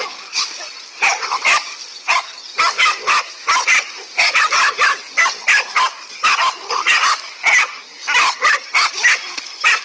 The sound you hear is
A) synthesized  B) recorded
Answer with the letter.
B